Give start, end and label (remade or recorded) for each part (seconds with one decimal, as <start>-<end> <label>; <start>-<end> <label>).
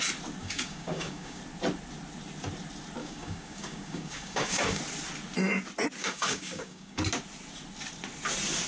0.0-0.4 recorded; 0.4-1.4 remade; 1.4-3.0 recorded; 3.0-4.8 remade; 4.8-6.0 recorded; 6.0-7.0 remade; 7.0-8.7 recorded